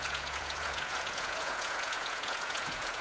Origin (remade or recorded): remade